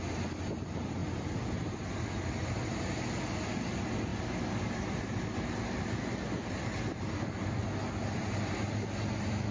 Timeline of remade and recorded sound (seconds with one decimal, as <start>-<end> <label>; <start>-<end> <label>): 0.0-9.5 recorded